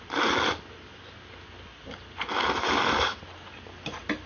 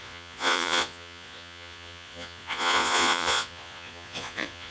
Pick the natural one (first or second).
first